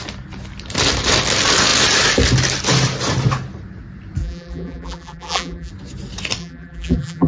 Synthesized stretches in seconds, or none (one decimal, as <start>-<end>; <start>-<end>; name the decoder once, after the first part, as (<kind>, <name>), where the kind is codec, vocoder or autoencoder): 4.2-5.7 (vocoder, BigVGAN v2); 6.4-7.3